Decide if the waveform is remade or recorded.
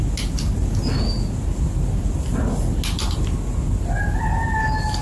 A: recorded